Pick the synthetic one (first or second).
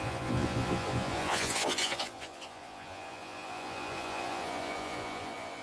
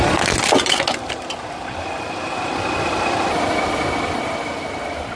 first